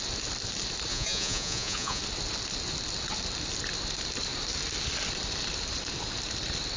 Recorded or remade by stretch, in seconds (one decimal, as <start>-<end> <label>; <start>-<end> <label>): 0.0-0.9 recorded; 0.9-2.0 remade; 2.0-6.8 recorded